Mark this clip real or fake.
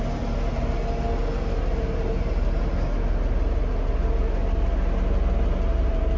real